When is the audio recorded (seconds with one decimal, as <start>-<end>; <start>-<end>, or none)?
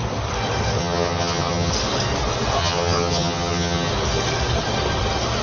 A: 0.0-0.8; 1.7-2.6; 3.9-5.4